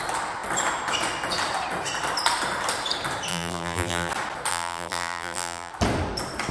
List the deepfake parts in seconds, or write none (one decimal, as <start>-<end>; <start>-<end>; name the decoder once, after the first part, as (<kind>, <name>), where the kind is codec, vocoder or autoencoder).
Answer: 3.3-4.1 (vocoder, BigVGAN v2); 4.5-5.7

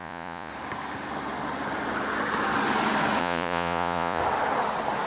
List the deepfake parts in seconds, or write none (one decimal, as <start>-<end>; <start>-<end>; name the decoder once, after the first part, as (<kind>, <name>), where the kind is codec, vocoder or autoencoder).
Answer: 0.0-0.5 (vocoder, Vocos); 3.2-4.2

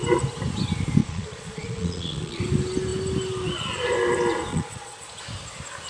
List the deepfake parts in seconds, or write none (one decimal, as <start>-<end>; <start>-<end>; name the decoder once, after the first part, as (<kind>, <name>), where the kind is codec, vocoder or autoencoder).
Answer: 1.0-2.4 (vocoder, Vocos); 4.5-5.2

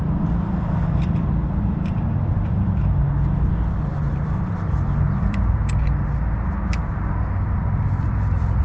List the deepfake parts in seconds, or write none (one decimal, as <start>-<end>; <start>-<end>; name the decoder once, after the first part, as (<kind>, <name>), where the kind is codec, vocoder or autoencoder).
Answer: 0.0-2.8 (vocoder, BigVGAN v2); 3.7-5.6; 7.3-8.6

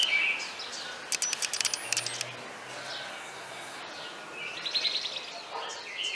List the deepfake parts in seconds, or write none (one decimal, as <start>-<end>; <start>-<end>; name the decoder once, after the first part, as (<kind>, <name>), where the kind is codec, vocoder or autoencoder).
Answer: 3.1-3.8 (codec, SNAC)